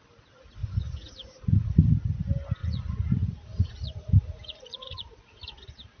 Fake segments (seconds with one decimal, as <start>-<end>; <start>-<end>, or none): 0.6-1.9; 2.6-6.0